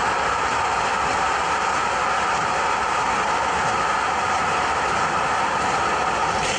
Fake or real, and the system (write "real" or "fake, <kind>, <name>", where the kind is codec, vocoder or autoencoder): real